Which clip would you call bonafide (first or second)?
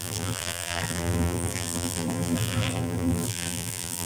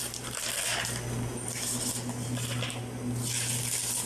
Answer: second